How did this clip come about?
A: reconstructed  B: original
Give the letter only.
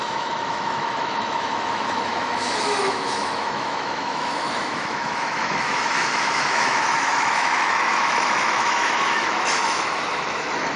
A